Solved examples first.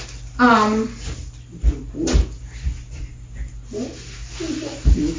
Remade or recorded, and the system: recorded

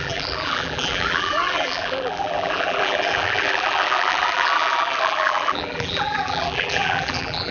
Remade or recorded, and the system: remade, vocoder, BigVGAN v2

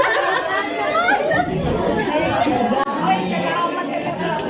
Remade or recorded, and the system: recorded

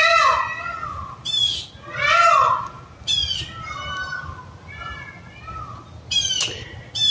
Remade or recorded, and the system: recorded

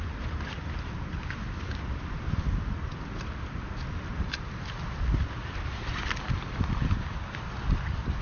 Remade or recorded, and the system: recorded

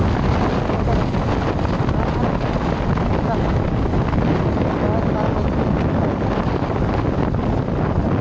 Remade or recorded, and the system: recorded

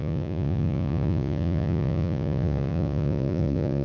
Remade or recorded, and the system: remade, vocoder, Vocos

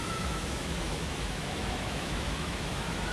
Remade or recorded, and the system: remade, autoencoder, DAC-VAE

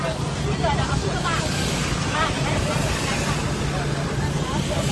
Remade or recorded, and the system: recorded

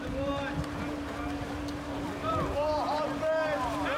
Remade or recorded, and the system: remade, vocoder, BigVGAN v2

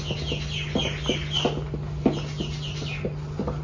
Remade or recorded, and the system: recorded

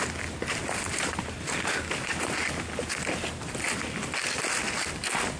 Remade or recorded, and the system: recorded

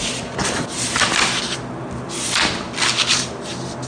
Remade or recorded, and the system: recorded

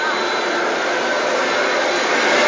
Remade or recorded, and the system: recorded